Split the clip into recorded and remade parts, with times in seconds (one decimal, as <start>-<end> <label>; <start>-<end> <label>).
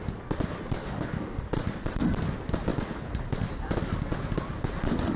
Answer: 0.0-0.8 recorded; 0.8-1.4 remade; 1.4-5.2 recorded